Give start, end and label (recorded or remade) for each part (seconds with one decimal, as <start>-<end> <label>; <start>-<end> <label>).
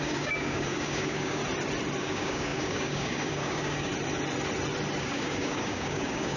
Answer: 0.0-1.4 remade; 1.4-2.0 recorded; 2.0-3.9 remade; 3.9-5.0 recorded; 5.0-6.4 remade